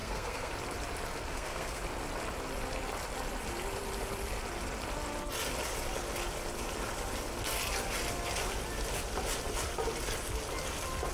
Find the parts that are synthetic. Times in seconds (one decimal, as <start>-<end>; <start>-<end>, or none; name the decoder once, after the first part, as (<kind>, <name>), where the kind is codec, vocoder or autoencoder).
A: 0.0-0.5 (codec, SNAC); 1.3-1.8